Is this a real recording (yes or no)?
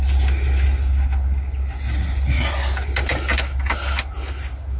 yes